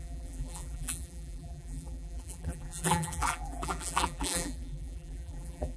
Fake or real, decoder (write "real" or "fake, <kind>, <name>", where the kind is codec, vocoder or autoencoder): fake, vocoder, BigVGAN v2